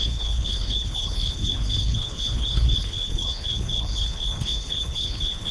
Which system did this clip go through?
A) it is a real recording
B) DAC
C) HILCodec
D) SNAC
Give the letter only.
C